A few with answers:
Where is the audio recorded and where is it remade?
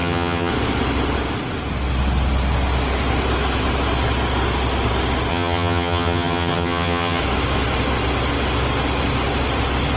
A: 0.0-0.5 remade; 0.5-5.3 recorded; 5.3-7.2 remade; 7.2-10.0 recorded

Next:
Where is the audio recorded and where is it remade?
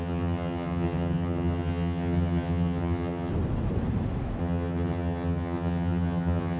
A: 0.0-3.3 remade; 3.3-4.4 recorded; 4.4-6.6 remade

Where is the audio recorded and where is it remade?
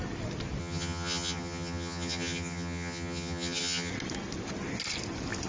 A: 0.0-0.6 recorded; 0.6-3.9 remade; 3.9-5.5 recorded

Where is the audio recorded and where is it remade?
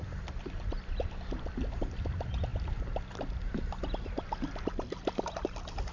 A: 0.0-5.9 recorded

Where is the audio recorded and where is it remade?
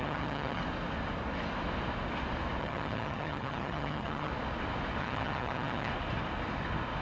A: 0.0-0.6 remade; 0.6-2.6 recorded; 2.6-4.3 remade; 4.3-5.0 recorded; 5.0-5.9 remade; 5.9-7.0 recorded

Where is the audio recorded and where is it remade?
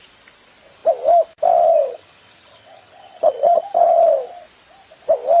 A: 0.0-1.9 recorded; 1.9-4.0 remade; 4.0-5.4 recorded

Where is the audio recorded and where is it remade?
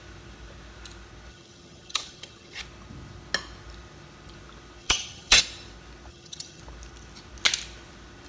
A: 0.0-1.3 recorded; 1.3-2.6 remade; 2.6-4.8 recorded; 4.8-5.4 remade; 5.4-6.1 recorded; 6.1-6.6 remade; 6.6-8.3 recorded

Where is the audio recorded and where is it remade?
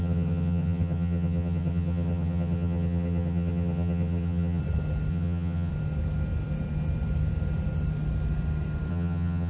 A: 0.0-4.6 remade; 4.6-5.1 recorded; 5.1-5.7 remade; 5.7-8.9 recorded; 8.9-9.5 remade